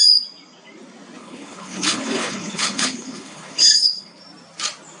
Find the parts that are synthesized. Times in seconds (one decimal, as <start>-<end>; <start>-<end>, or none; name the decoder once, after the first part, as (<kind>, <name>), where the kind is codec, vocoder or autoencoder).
1.2-4.2 (codec, HILCodec)